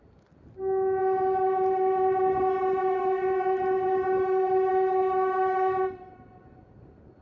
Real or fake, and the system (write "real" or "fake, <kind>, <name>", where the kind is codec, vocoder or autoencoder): real